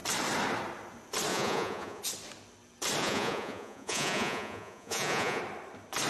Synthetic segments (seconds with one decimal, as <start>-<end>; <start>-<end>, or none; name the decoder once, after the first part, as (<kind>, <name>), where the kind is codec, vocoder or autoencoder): 1.3-2.0 (vocoder, Vocos); 3.0-5.4